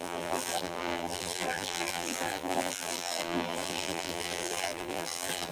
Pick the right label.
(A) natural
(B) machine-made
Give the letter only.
B